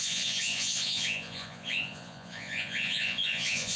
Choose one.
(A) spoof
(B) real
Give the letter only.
A